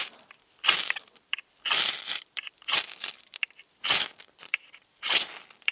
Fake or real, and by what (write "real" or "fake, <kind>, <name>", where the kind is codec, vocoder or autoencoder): fake, vocoder, BigVGAN v2